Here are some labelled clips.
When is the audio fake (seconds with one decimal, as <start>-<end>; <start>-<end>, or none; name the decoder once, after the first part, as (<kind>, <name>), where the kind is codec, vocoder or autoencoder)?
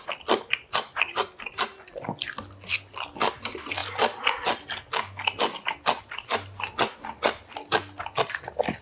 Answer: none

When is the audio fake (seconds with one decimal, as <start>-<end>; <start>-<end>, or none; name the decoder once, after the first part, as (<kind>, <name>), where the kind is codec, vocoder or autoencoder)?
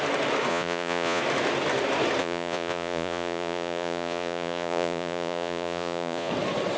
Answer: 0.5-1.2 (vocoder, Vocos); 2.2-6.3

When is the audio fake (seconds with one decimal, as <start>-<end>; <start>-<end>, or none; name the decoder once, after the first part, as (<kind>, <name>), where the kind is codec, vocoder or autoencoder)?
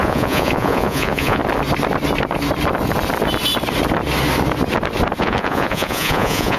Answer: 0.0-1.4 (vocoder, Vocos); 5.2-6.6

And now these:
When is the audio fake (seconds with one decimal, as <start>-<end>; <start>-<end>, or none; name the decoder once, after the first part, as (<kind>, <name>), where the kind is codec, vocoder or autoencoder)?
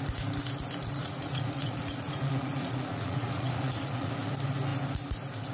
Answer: 1.0-4.1 (vocoder, Vocos)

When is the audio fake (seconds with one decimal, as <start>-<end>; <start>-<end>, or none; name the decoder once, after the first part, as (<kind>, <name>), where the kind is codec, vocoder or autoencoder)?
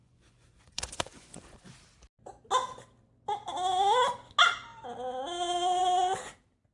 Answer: 0.0-1.7 (vocoder, Vocos)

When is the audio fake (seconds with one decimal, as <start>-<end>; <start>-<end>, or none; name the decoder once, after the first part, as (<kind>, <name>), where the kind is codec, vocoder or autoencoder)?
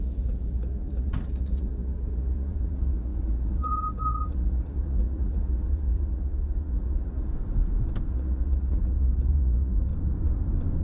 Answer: 0.0-7.3 (vocoder, Vocos); 8.1-9.9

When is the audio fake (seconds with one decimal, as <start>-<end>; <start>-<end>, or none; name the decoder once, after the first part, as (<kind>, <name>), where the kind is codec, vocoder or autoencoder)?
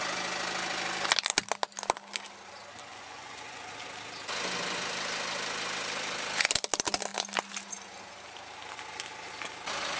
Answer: 2.9-3.7 (vocoder, Vocos)